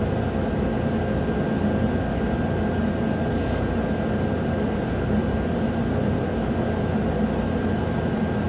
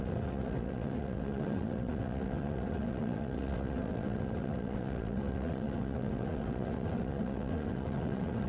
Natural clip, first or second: first